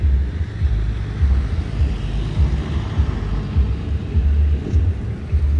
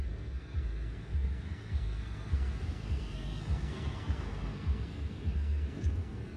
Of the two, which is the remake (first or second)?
second